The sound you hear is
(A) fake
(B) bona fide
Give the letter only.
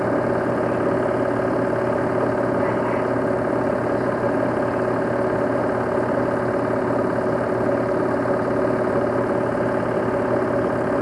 B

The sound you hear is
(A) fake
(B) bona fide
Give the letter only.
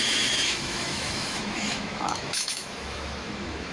A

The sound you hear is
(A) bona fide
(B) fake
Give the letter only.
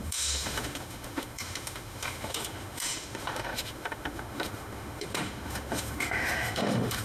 B